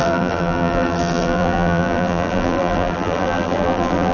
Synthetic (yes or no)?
yes